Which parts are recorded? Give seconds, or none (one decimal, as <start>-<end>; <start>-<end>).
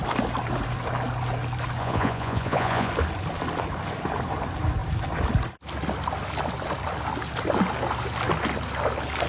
0.0-1.8; 2.9-9.3